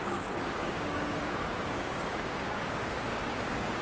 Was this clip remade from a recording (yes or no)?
yes